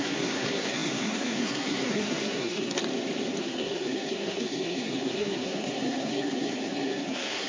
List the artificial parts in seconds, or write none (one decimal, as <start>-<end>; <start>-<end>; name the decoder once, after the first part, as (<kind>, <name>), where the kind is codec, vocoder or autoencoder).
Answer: 0.0-2.8 (codec, SNAC); 3.4-7.5